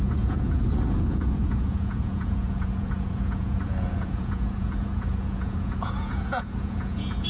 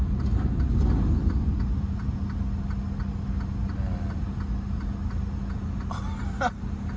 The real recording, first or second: second